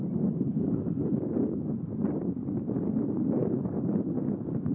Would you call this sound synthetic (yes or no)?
no